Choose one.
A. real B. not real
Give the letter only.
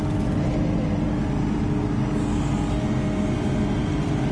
A